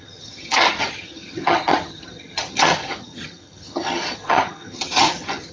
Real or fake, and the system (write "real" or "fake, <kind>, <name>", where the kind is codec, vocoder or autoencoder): fake, vocoder, HiFi-GAN